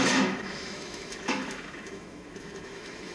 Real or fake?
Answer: fake